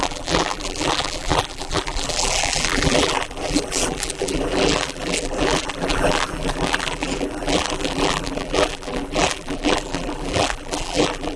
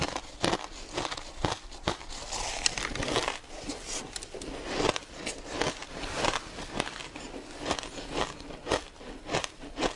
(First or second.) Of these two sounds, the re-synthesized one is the first